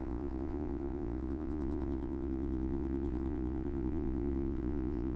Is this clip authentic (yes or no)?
no